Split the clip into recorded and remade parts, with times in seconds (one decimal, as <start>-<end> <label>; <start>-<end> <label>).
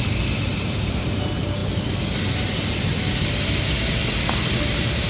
0.0-5.1 recorded